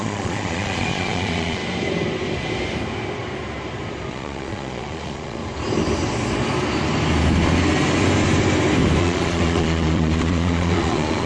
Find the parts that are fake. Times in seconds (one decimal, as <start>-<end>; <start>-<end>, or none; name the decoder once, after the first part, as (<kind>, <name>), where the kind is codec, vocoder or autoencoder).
0.0-1.6 (vocoder, Vocos); 4.1-5.4; 9.0-11.3